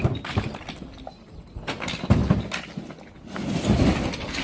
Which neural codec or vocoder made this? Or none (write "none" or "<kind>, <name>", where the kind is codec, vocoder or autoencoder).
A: none